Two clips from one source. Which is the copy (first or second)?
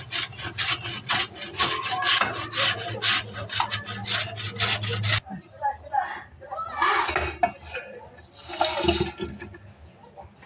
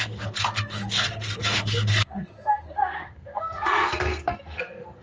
second